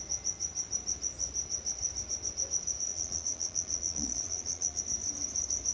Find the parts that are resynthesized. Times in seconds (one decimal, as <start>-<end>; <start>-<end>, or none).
2.9-4.8